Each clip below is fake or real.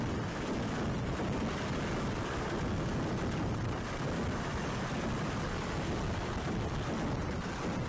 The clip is real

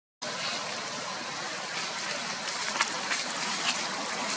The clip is real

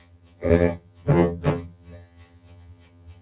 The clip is fake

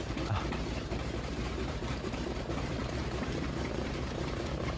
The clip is fake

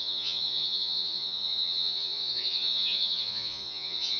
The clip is fake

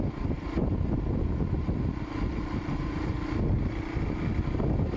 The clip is real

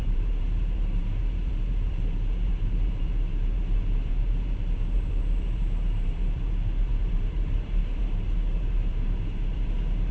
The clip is fake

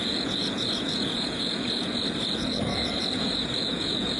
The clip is fake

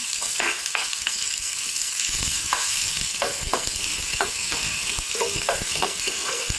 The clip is fake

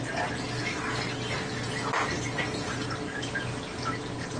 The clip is real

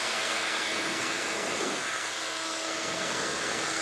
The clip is fake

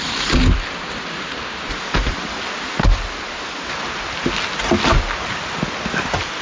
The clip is real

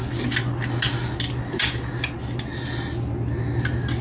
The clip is real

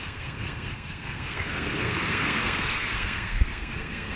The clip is fake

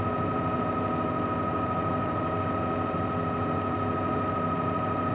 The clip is real